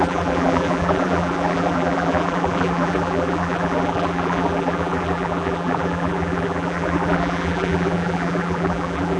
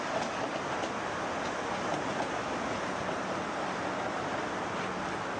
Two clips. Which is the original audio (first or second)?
second